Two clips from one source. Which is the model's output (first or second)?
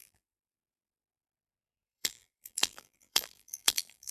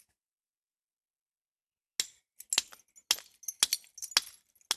first